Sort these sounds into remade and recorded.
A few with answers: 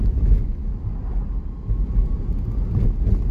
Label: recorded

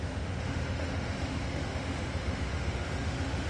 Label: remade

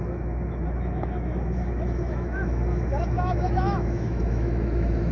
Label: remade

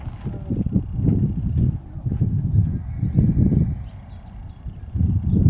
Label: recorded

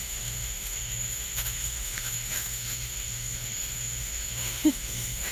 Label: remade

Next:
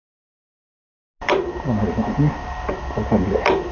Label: recorded